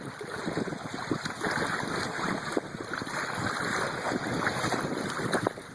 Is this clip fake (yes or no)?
no